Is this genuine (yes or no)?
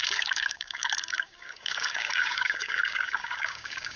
no